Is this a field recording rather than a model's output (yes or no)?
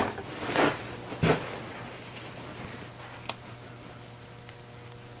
yes